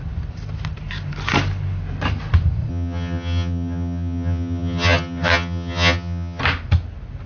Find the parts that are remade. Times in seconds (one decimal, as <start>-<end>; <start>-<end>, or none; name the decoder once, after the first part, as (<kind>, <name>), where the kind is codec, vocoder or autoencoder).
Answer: 2.7-6.4 (vocoder, HiFi-GAN)